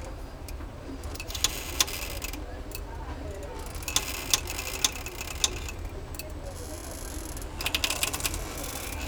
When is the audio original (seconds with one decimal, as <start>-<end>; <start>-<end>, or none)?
0.0-0.7; 1.4-9.1